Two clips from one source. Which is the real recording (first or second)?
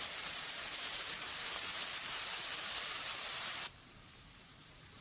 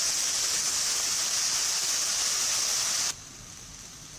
second